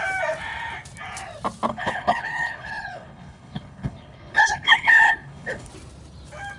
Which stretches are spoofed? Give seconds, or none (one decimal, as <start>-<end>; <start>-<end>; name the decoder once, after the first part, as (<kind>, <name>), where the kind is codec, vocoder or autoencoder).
1.7-5.7 (codec, HILCodec)